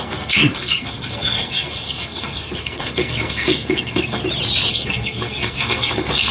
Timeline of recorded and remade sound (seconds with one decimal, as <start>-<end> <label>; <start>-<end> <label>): 0.0-4.2 remade; 4.2-4.7 recorded; 4.7-6.3 remade